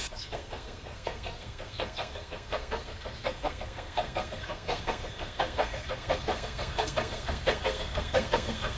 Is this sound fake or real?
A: fake